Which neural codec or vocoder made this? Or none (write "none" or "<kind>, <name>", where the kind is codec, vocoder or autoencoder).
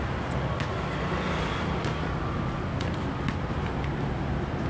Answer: none